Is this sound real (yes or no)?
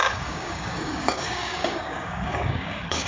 no